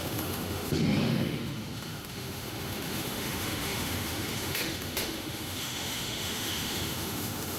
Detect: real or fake fake